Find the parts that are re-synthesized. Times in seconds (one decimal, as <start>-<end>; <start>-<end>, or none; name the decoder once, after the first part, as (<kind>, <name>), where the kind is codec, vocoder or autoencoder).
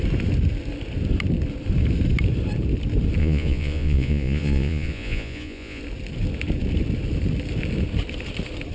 3.2-5.8 (vocoder, Vocos)